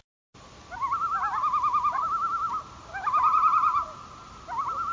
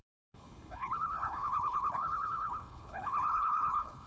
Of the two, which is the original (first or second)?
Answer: first